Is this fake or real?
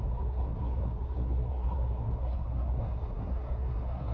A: fake